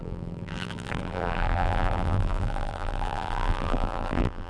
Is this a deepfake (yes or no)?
yes